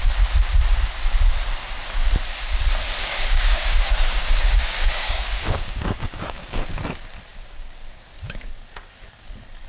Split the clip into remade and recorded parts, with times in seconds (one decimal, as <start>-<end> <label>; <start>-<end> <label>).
0.0-3.0 recorded; 3.0-6.7 remade; 6.7-7.3 recorded; 7.3-8.5 remade; 8.5-9.7 recorded